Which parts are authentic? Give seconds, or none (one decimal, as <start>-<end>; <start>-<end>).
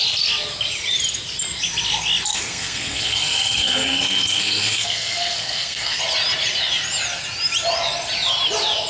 0.0-2.3; 6.0-8.9